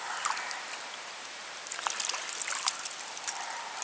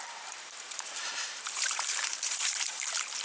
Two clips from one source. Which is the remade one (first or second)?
second